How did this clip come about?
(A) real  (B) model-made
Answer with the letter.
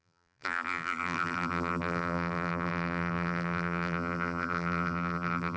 B